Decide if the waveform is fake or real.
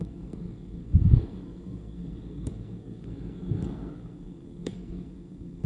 fake